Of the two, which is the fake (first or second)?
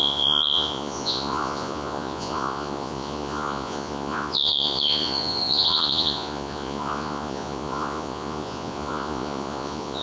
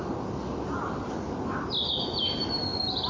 first